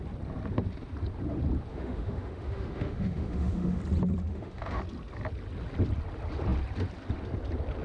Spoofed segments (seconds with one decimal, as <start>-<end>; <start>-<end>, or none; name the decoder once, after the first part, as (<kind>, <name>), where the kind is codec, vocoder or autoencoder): 1.7-3.8 (autoencoder, DAC-VAE); 4.3-4.8